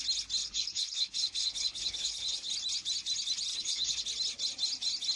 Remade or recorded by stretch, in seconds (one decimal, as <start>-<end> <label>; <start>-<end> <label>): 0.0-0.4 recorded; 0.4-2.5 remade; 2.5-3.5 recorded; 3.5-4.0 remade; 4.0-5.2 recorded